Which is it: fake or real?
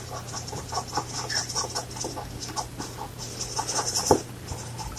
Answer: fake